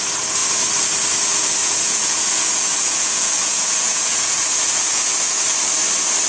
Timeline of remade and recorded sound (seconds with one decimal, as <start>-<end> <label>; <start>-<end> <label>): 0.0-1.6 recorded; 1.6-5.4 remade; 5.4-6.3 recorded